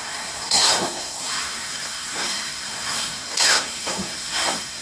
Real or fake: fake